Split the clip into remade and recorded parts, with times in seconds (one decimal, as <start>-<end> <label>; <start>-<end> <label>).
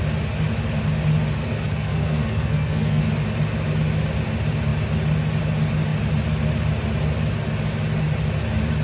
0.0-1.4 recorded; 1.4-3.0 remade; 3.0-8.8 recorded